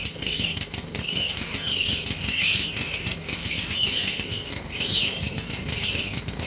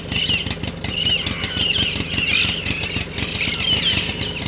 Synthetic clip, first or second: first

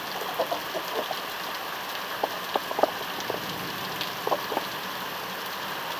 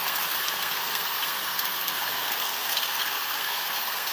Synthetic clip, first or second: second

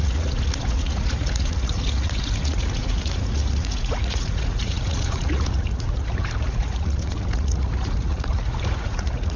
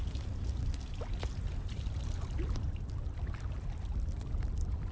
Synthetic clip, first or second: first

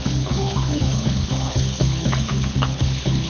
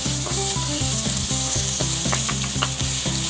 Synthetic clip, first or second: first